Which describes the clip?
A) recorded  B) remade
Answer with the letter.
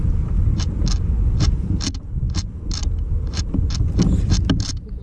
A